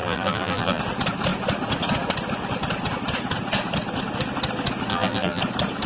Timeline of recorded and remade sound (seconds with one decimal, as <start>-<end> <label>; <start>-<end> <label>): 0.0-0.8 remade; 0.8-4.9 recorded; 4.9-5.4 remade; 5.4-5.9 recorded